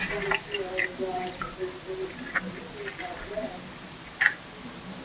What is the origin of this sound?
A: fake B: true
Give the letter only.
B